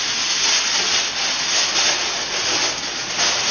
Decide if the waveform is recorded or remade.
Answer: recorded